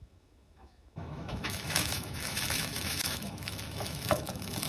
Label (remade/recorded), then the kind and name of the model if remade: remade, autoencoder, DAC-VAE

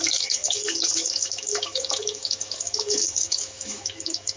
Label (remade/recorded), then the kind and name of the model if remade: remade, autoencoder, DAC-VAE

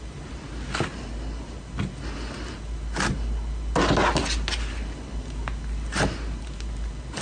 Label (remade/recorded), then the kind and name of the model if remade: recorded